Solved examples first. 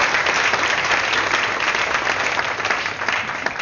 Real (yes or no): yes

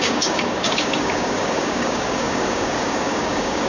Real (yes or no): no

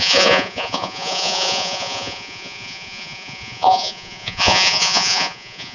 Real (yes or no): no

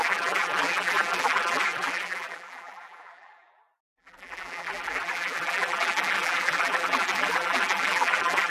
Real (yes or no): no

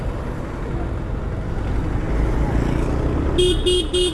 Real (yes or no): yes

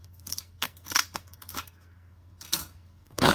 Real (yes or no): no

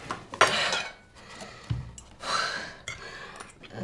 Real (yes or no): yes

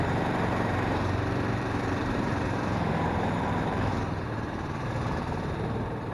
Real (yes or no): no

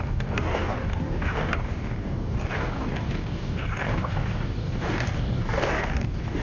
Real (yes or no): no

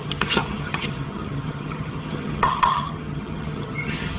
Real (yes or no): no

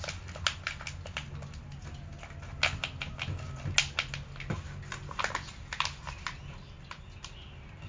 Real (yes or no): yes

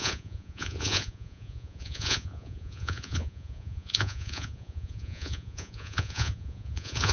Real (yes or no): no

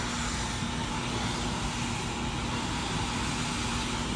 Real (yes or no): yes